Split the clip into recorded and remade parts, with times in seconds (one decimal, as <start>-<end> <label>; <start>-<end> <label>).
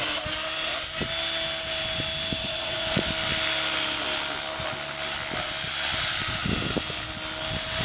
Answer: 0.0-2.4 recorded; 2.4-3.1 remade; 3.1-7.8 recorded